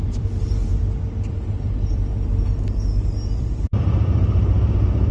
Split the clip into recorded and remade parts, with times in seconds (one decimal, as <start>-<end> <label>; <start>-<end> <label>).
0.0-0.7 remade; 0.7-1.3 recorded; 1.3-2.1 remade; 2.1-3.3 recorded; 3.3-5.1 remade